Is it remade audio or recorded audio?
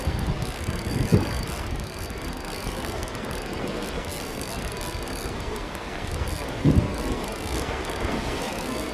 remade